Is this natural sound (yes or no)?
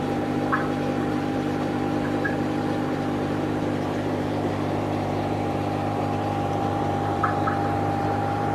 no